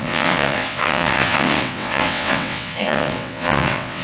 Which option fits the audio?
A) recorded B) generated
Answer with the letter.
B